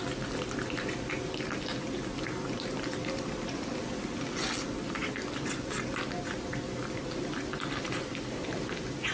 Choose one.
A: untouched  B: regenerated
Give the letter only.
A